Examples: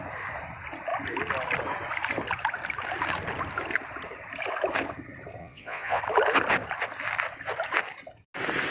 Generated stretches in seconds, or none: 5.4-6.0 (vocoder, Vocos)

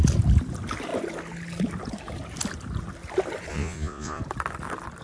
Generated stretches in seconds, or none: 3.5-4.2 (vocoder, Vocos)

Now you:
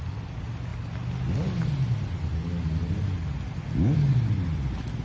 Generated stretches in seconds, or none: none

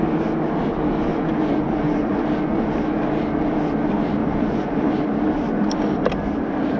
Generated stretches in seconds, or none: 1.1-2.2 (vocoder, Vocos); 4.2-4.9

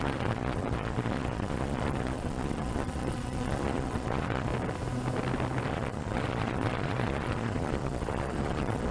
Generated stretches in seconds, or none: 0.0-4.5 (vocoder, Vocos); 5.7-8.9

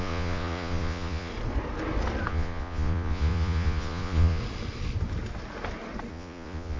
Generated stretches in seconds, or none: 0.0-1.3 (vocoder, Vocos); 2.3-4.4; 6.1-6.8

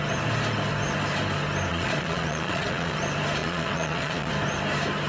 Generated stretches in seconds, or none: 1.7-3.0 (vocoder, Vocos); 3.4-4.3

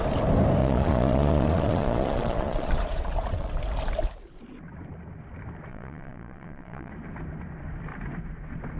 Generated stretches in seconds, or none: 0.6-3.6 (vocoder, Vocos); 5.7-6.9